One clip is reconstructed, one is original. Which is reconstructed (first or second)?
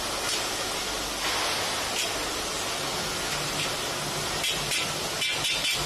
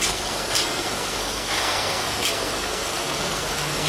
second